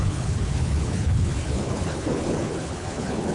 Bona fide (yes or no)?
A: no